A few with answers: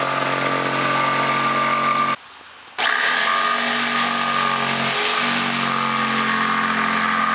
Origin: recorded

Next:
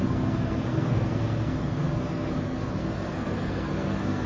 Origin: remade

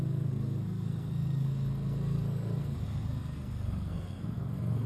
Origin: remade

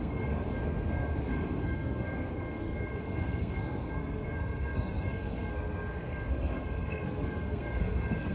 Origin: remade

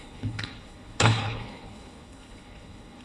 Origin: remade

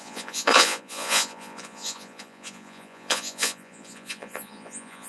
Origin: remade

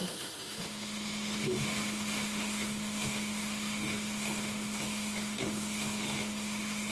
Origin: remade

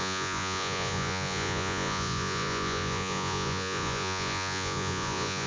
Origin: remade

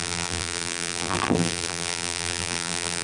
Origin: remade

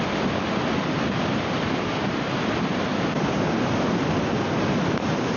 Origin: recorded